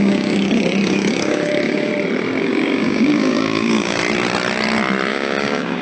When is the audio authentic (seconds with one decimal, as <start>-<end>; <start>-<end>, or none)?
1.9-2.4; 4.0-5.1